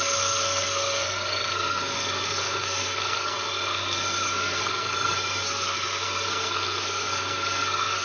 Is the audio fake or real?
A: fake